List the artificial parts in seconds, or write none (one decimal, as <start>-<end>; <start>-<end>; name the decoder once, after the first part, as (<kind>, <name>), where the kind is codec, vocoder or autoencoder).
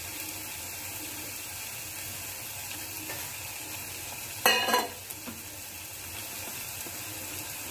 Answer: none